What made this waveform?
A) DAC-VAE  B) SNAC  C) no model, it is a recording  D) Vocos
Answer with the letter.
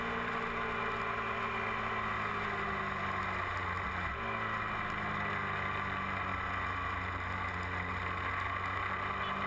C